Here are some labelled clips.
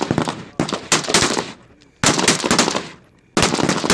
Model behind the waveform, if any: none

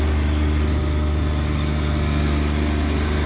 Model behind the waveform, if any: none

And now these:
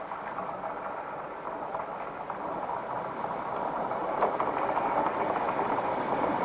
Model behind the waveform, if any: none